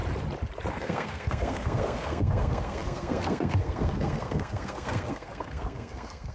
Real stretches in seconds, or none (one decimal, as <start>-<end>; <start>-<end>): 0.0-0.7